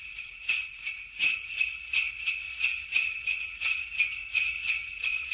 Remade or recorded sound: remade